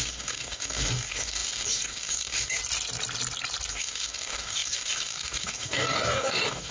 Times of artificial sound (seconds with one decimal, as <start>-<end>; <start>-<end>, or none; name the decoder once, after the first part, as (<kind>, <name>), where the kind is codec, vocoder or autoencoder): 0.0-2.6 (codec, DAC); 3.7-6.7